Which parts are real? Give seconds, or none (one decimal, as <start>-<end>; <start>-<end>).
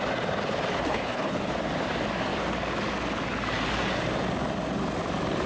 0.0-0.7; 1.4-5.5